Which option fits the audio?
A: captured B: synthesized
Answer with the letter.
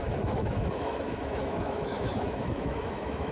B